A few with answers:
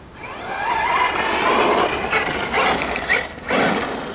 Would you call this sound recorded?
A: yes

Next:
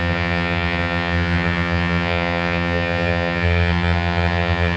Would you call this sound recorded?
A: no